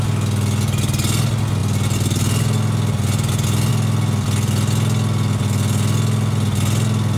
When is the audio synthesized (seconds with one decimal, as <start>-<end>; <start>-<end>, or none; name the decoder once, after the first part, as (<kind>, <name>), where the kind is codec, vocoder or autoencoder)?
none